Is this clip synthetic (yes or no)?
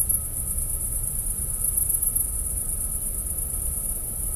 no